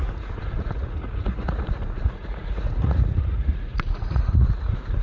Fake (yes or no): yes